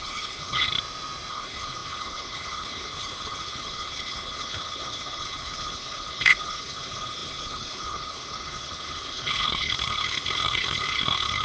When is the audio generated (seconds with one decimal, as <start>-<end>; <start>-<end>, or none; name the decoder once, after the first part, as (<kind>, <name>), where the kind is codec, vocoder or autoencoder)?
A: 0.0-0.7 (codec, HILCodec); 1.3-11.4